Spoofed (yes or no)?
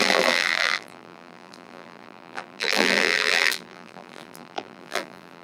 yes